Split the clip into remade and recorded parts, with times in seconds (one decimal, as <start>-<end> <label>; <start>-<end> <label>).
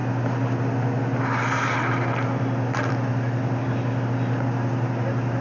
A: 0.0-5.4 recorded